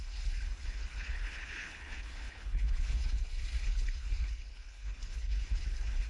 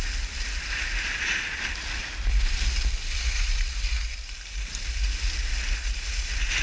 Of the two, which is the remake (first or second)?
first